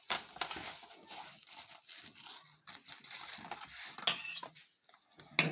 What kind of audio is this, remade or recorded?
recorded